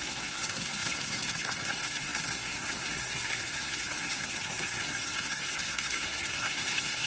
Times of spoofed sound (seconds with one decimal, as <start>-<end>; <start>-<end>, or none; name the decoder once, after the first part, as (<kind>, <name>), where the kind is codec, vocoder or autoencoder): 0.0-7.1 (codec, SNAC)